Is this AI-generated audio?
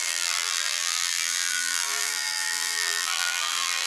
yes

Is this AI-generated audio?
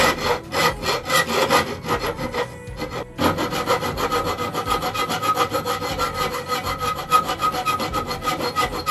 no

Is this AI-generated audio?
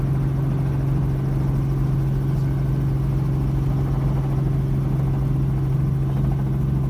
no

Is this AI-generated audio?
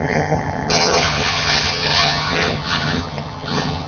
yes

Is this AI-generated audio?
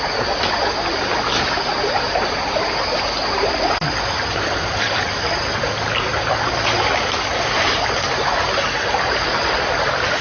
no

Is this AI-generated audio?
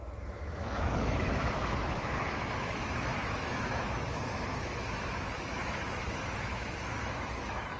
yes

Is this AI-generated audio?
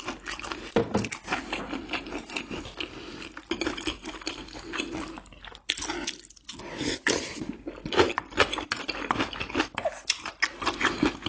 no